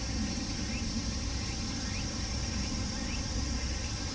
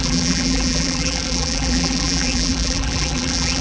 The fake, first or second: second